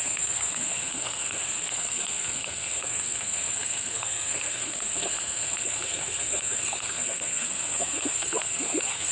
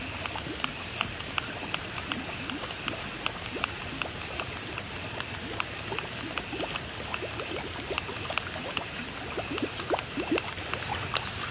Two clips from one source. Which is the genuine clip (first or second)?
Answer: second